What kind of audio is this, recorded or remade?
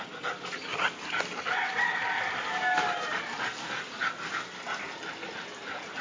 recorded